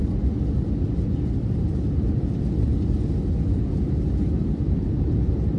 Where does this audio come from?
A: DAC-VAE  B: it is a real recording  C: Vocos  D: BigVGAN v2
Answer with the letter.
B